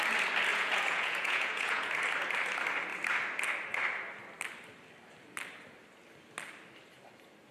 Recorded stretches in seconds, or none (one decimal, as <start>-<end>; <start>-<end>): 0.0-0.5; 1.9-7.5